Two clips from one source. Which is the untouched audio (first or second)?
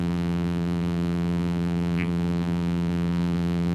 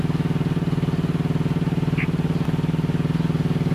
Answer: second